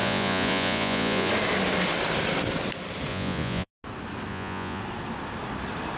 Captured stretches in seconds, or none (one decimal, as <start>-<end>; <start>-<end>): 1.3-3.1; 3.7-4.3; 4.8-6.0